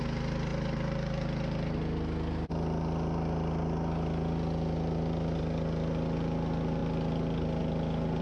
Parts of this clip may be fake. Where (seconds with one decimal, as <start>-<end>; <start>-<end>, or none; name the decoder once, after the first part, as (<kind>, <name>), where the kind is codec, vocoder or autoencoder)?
none